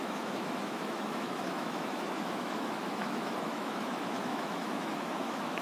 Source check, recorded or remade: remade